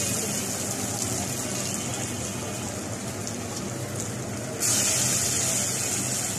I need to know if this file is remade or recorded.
recorded